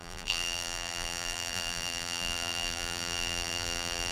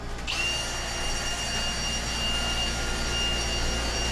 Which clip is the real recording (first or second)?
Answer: second